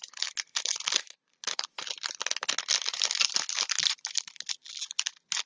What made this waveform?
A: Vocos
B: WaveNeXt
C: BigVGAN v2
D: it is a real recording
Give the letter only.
D